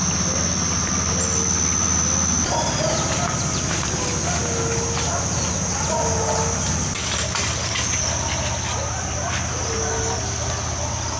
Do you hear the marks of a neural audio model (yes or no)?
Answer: no